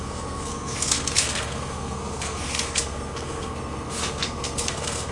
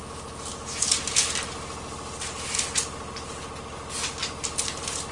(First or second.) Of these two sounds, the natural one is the second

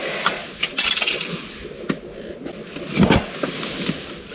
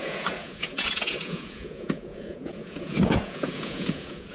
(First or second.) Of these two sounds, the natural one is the first